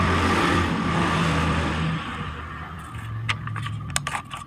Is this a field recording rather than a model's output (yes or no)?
yes